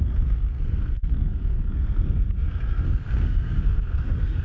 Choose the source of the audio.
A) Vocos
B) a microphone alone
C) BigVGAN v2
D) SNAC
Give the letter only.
D